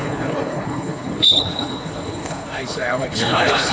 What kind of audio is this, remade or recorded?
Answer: remade